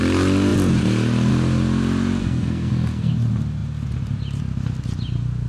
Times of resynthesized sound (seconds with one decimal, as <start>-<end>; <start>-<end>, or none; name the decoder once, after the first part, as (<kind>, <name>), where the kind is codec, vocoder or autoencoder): 2.2-3.1 (codec, SNAC)